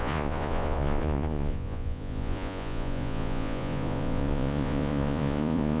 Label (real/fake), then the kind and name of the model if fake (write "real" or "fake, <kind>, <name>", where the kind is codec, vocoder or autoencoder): fake, vocoder, Vocos